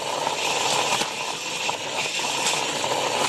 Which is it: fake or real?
real